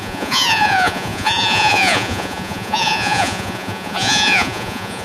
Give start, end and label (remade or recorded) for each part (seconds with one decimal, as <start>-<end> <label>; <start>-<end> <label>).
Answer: 0.0-5.0 remade